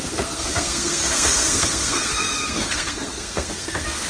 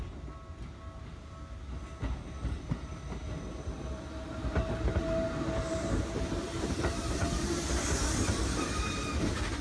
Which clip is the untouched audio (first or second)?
second